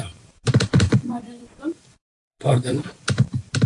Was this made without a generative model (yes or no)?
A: no